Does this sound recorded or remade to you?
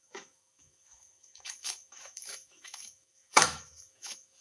remade